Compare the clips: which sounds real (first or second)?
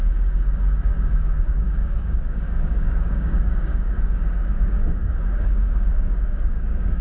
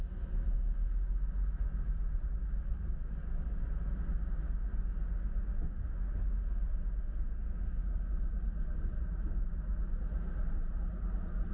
second